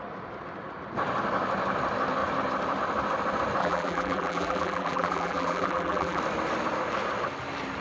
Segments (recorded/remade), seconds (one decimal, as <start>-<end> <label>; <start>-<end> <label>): 0.0-3.6 recorded; 3.6-6.2 remade; 6.2-7.8 recorded